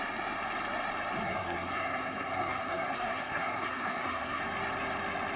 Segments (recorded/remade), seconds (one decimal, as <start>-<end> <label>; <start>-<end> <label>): 0.0-1.2 recorded; 1.2-4.4 remade; 4.4-5.4 recorded